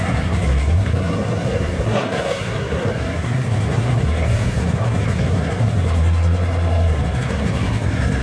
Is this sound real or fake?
fake